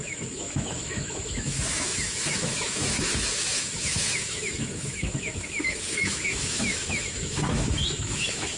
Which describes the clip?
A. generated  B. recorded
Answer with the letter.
A